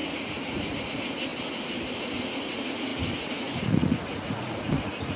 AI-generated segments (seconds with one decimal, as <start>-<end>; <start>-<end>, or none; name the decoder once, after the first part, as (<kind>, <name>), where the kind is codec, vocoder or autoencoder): 0.0-1.3 (vocoder, Vocos); 2.0-5.2